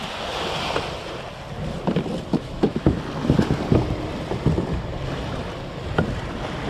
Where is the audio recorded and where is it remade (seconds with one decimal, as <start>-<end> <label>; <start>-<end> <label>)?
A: 0.0-2.3 recorded; 2.3-3.0 remade; 3.0-6.7 recorded